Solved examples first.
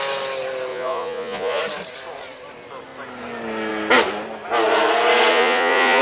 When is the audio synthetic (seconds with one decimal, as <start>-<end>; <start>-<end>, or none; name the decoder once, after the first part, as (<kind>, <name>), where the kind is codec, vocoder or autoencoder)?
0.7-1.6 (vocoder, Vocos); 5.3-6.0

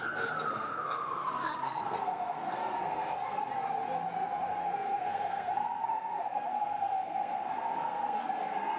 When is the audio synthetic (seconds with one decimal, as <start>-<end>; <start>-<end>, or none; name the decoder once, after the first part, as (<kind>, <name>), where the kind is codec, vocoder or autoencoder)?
0.0-3.4 (codec, SNAC); 4.6-8.8

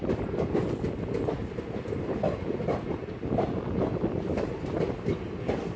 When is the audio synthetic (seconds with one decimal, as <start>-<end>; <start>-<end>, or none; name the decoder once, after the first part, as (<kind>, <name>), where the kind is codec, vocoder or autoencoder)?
1.4-3.0 (vocoder, BigVGAN v2)

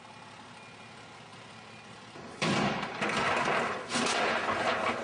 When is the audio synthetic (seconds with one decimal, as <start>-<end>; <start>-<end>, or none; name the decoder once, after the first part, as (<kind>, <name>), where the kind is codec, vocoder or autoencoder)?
1.3-3.3 (vocoder, BigVGAN v2)

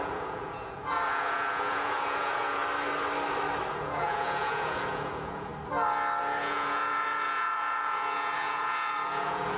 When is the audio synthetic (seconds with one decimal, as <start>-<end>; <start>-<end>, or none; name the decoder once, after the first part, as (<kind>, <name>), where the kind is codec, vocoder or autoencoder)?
0.0-2.6 (vocoder, Vocos); 3.7-5.5; 6.2-9.6

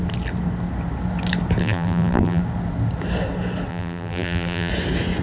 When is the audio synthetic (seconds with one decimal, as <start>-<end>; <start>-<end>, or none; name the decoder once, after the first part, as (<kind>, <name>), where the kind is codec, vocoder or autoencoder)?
1.6-2.4 (vocoder, BigVGAN v2); 3.7-4.7

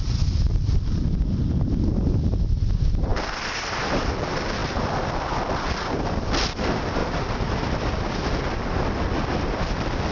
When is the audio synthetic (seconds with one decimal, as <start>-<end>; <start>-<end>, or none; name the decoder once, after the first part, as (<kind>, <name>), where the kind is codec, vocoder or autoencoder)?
none